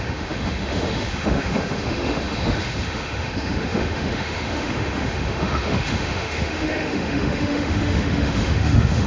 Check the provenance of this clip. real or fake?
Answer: fake